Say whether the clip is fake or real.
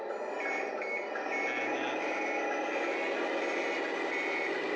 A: real